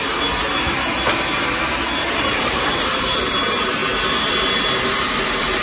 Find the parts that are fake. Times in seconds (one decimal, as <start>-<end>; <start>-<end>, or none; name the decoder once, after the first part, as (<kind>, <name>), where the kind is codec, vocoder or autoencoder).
2.3-3.8 (vocoder, BigVGAN v2); 4.6-5.6